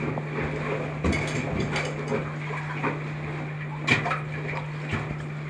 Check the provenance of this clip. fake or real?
real